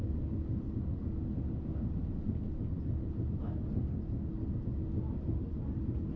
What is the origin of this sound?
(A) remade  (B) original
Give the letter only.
B